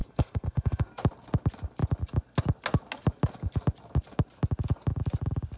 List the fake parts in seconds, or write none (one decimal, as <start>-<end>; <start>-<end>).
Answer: 0.0-0.9